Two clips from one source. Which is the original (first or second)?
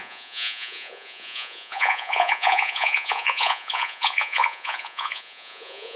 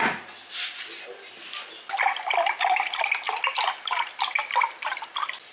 second